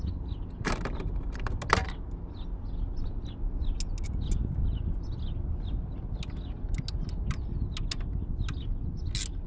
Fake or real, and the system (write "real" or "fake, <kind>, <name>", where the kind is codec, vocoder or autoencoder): real